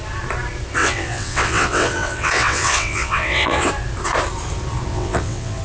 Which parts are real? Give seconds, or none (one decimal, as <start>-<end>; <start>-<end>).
0.0-0.8; 3.7-4.9